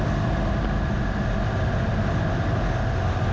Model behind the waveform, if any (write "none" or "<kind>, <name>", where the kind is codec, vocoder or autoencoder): none